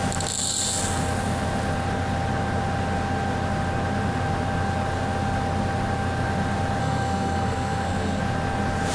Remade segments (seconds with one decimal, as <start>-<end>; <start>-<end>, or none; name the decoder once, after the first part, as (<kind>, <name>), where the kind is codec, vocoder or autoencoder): 6.8-8.2 (codec, SNAC)